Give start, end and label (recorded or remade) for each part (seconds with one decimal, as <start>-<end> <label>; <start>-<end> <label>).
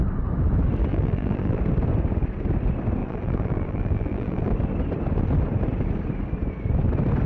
0.0-0.9 recorded; 0.9-1.6 remade; 1.6-3.0 recorded; 3.0-4.5 remade; 4.5-7.3 recorded